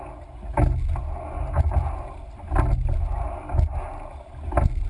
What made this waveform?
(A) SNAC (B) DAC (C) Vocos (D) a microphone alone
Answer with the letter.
D